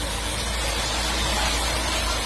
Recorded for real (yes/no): yes